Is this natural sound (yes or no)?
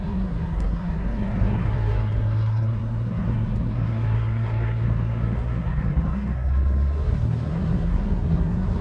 no